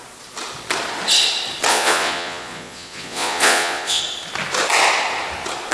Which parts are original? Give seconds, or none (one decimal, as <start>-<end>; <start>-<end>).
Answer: 0.0-1.7; 4.0-5.7